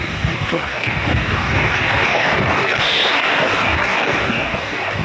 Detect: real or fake fake